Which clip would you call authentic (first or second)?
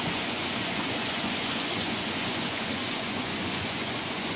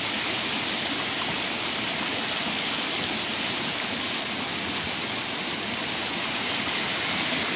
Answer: second